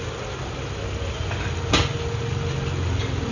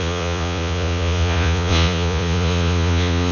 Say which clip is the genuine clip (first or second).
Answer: first